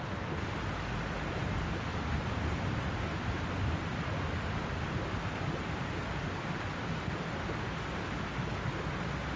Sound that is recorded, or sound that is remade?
recorded